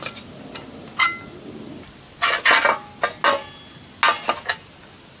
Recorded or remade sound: recorded